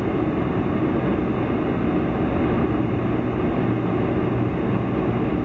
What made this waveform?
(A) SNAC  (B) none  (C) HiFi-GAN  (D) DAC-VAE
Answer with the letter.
B